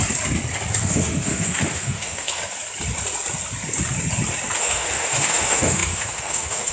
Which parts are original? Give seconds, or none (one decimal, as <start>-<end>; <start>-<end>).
0.0-0.8; 2.4-4.6